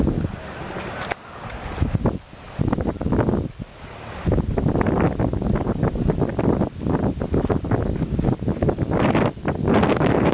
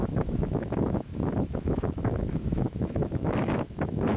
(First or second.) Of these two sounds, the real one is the first